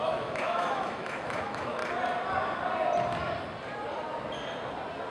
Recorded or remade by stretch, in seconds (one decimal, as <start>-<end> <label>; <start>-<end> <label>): 0.0-1.8 remade; 1.8-5.1 recorded